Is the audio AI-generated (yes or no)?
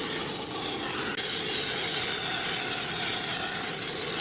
no